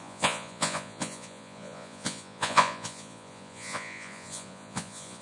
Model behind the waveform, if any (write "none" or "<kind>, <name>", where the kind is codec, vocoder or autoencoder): vocoder, Vocos